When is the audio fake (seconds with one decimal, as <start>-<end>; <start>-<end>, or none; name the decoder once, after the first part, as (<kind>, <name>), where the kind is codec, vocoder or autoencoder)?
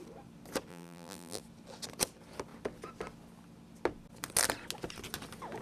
0.7-1.4 (vocoder, BigVGAN v2)